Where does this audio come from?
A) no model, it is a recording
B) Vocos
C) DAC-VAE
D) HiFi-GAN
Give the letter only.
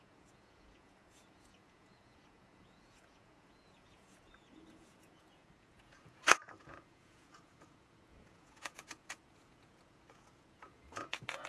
B